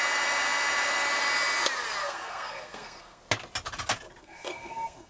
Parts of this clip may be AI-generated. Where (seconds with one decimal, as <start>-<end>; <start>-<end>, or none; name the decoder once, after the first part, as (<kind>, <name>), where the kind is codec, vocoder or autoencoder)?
2.0-3.2 (codec, SNAC); 4.2-5.1